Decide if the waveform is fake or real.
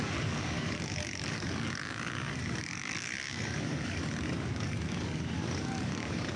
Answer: fake